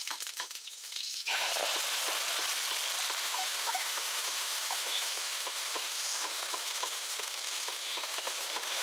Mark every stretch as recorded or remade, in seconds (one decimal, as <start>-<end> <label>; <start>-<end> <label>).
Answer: 0.0-1.5 remade; 1.5-3.2 recorded; 3.2-8.8 remade